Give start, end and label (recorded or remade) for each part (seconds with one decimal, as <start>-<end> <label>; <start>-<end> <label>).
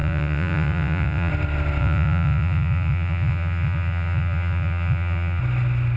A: 0.0-1.3 remade; 1.3-1.8 recorded; 1.8-5.4 remade; 5.4-6.0 recorded